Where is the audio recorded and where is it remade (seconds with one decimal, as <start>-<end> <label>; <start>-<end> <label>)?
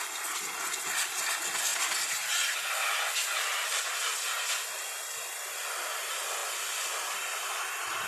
0.0-6.4 recorded; 6.4-8.1 remade